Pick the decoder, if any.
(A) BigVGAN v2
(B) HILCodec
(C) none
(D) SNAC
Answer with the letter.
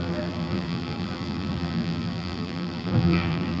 A